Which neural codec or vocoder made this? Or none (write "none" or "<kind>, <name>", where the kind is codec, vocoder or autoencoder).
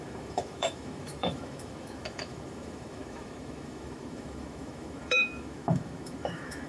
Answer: autoencoder, DAC-VAE